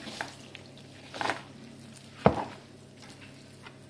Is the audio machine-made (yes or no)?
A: no